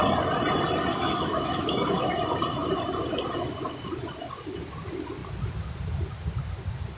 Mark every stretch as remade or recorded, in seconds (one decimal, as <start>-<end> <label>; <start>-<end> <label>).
0.0-0.9 recorded; 0.9-2.2 remade; 2.2-7.0 recorded